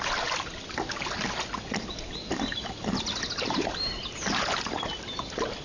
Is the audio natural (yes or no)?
yes